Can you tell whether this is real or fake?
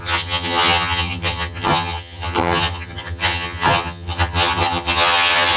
fake